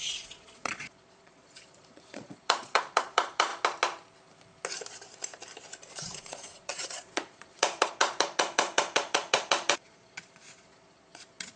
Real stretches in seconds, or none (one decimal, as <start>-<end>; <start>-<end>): 3.5-5.9